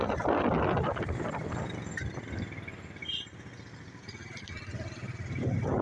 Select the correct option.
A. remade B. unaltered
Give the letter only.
B